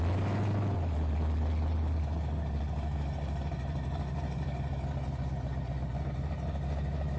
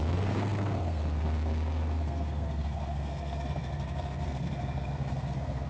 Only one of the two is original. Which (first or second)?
first